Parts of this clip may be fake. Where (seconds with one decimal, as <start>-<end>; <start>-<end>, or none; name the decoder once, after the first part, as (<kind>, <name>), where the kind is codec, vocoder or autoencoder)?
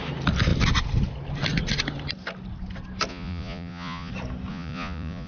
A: 3.1-4.1 (vocoder, Vocos); 4.5-5.3